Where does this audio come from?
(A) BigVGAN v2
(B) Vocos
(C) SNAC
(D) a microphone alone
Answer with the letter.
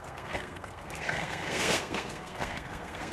C